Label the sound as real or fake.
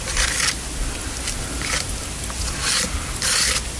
real